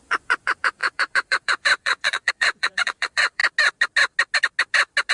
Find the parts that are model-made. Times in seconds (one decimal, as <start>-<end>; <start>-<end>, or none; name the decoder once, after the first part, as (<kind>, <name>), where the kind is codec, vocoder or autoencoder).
0.0-3.4 (vocoder, Vocos)